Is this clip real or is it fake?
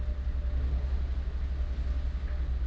real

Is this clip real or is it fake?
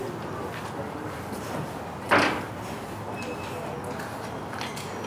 real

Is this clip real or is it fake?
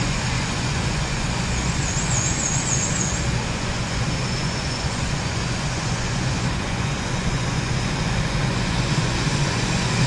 fake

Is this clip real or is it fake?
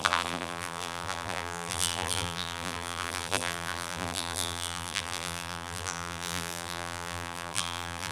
fake